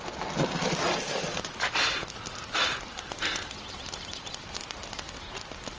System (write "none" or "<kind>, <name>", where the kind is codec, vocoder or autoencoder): none